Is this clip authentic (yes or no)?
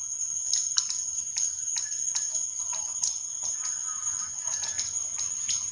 yes